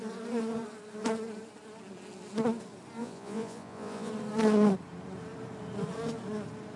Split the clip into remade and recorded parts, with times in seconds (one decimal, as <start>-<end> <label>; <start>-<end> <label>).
0.0-3.0 recorded; 3.0-4.1 remade; 4.1-6.8 recorded